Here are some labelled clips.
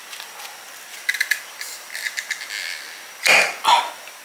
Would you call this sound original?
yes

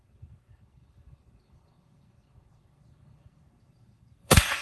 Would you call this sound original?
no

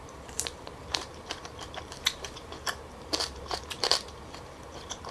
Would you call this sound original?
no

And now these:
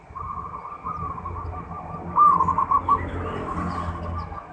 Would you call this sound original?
yes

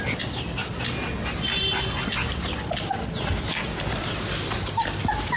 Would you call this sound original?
yes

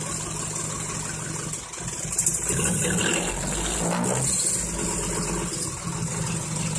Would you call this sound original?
yes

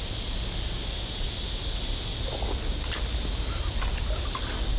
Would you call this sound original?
yes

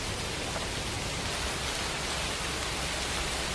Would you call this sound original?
yes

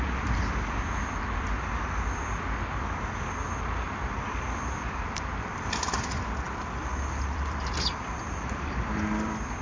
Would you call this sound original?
no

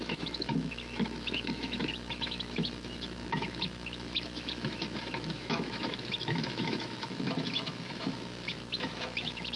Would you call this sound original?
no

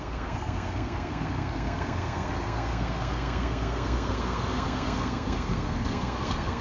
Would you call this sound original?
no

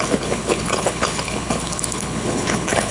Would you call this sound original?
no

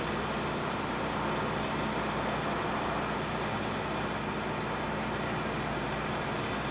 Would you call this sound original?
yes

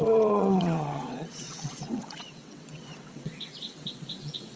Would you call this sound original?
no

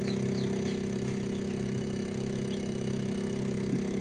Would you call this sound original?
no